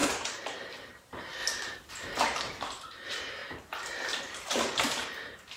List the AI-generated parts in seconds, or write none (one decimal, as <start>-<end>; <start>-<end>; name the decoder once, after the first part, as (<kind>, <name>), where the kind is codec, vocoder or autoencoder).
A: 0.8-1.4 (vocoder, BigVGAN v2); 2.2-3.4; 4.2-5.6